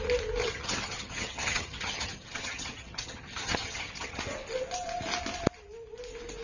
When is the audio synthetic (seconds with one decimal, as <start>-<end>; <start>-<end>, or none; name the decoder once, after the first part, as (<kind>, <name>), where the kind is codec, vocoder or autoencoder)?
0.4-4.2 (vocoder, HiFi-GAN)